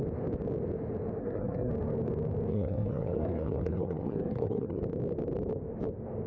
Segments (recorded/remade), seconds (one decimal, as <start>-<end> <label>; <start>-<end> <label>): 0.0-1.2 recorded; 1.2-1.7 remade; 1.7-2.5 recorded; 2.5-4.8 remade; 4.8-6.3 recorded